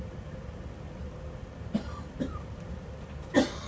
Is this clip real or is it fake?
real